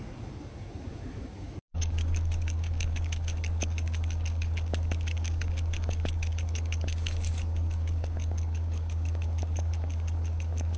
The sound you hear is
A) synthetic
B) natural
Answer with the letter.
A